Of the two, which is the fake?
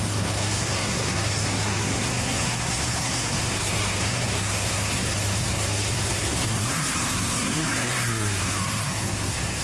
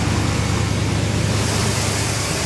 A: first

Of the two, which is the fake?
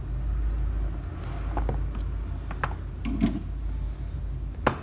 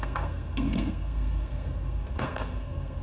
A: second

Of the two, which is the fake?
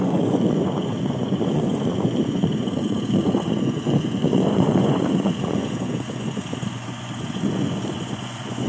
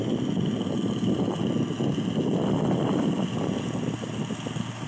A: first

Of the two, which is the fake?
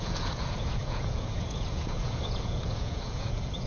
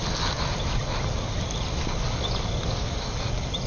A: first